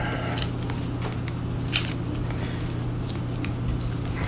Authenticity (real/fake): real